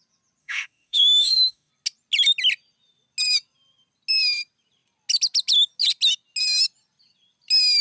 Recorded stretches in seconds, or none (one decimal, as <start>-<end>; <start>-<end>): 0.0-0.4; 1.7-7.8